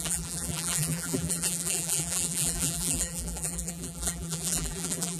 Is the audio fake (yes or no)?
yes